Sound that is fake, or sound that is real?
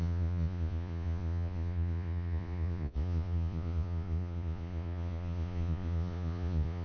fake